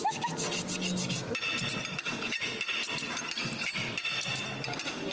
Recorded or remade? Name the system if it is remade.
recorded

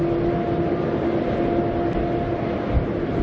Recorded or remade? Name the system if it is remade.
recorded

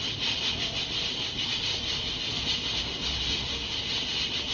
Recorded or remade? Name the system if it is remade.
recorded